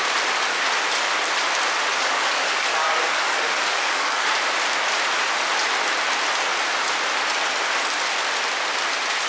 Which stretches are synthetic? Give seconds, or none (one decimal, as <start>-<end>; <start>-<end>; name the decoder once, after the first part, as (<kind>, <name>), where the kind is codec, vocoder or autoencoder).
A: 1.9-4.3 (codec, DAC)